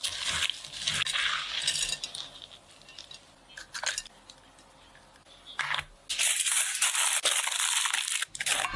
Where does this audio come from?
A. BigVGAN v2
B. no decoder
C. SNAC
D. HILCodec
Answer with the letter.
B